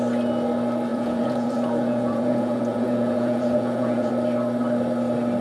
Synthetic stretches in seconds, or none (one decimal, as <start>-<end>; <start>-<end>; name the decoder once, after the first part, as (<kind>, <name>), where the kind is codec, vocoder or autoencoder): 0.9-4.1 (vocoder, Vocos)